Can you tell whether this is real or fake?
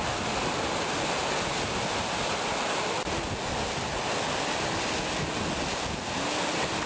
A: real